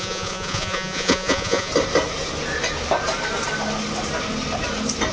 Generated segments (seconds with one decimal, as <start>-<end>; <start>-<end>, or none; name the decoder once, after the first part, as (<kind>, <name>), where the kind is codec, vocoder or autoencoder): 0.0-1.7 (vocoder, Vocos)